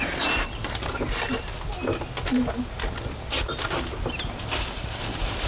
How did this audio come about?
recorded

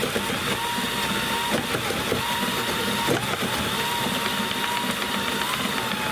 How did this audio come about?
recorded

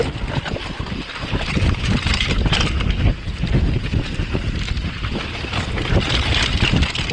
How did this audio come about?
recorded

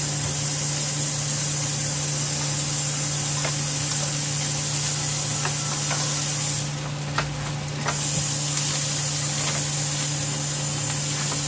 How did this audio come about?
recorded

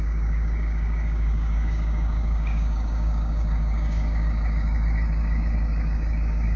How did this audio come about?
remade